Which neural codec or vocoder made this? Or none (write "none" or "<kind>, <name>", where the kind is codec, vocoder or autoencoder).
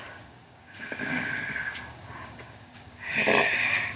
codec, DAC